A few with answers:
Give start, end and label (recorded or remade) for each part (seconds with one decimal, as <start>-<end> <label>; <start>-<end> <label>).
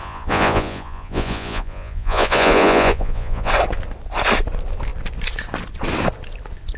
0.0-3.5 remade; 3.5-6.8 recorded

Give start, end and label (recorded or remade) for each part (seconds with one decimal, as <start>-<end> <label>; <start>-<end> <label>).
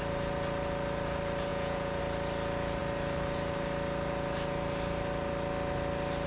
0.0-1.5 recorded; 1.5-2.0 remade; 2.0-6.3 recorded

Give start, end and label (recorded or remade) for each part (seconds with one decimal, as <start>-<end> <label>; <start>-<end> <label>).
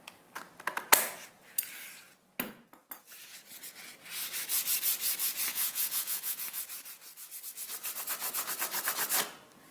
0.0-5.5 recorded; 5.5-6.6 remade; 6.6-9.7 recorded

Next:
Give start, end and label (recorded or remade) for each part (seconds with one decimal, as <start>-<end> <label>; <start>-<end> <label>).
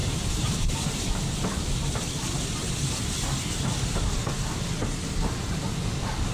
0.0-0.7 remade; 0.7-6.3 recorded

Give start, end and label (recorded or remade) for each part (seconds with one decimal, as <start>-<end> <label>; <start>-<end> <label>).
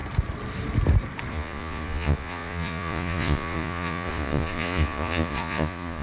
0.0-1.3 recorded; 1.3-6.0 remade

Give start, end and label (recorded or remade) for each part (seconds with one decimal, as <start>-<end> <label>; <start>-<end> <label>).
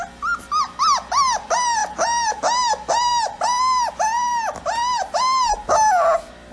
0.0-6.5 recorded